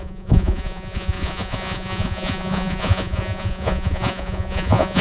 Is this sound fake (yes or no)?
yes